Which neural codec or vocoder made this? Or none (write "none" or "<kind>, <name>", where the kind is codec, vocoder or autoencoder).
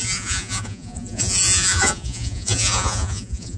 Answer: vocoder, Vocos